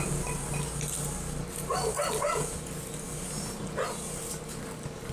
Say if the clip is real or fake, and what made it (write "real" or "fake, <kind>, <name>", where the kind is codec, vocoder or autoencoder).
real